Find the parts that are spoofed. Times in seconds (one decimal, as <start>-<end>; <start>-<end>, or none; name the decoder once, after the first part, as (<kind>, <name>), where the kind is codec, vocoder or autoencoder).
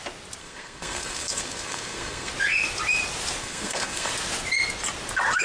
0.4-2.3 (codec, SNAC); 3.4-4.1